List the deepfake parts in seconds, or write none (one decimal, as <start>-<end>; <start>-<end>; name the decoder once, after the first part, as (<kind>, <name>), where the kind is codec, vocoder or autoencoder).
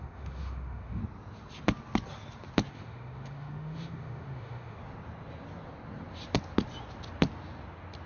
0.0-1.0 (autoencoder, DAC-VAE); 2.7-4.8